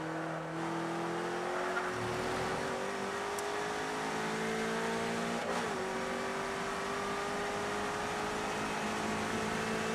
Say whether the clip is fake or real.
real